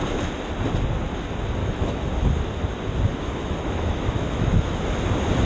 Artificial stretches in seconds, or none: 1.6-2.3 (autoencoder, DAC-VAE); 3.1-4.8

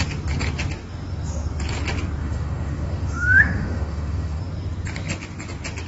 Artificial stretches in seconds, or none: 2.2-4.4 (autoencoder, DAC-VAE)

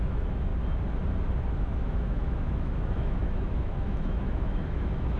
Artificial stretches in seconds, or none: 0.0-0.5 (autoencoder, DAC-VAE); 1.5-5.2